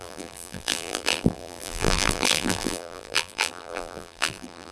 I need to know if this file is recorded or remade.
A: remade